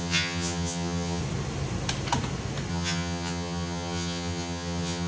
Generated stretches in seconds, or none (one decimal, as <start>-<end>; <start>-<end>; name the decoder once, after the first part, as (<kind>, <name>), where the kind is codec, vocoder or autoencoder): 0.0-1.2 (vocoder, HiFi-GAN); 2.7-5.1